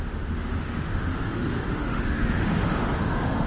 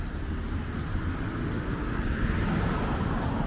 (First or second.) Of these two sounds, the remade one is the first